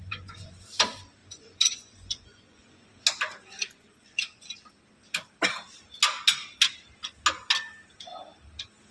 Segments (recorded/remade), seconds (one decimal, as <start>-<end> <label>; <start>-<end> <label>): 0.0-0.6 remade; 0.6-1.2 recorded; 1.2-3.0 remade; 3.0-3.6 recorded; 3.6-4.5 remade; 4.5-8.9 recorded